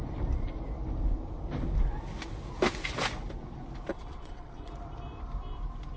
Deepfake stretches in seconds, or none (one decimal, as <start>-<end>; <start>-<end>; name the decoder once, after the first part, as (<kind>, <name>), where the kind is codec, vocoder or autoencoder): 3.9-4.7 (vocoder, WaveNeXt)